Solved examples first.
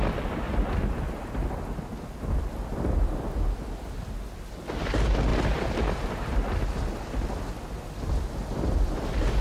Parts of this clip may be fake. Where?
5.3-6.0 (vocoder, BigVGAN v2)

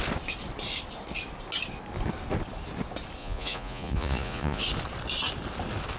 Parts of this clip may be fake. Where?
3.2-4.6 (vocoder, Vocos)

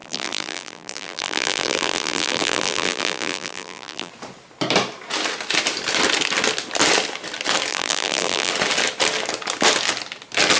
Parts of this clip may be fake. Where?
0.0-4.1 (vocoder, BigVGAN v2); 7.7-8.5

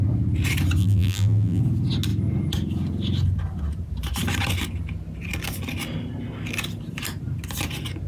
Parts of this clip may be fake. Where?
0.8-1.6 (vocoder, BigVGAN v2)

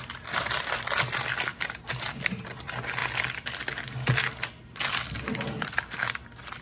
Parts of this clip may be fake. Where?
none

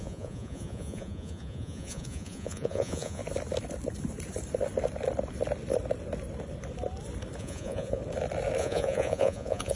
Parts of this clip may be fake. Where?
0.0-3.2 (vocoder, Vocos); 7.4-8.0; 8.6-9.8

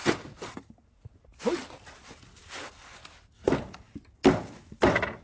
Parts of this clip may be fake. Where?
none